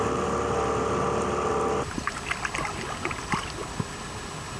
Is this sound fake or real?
real